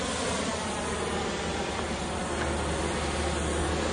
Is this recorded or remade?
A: recorded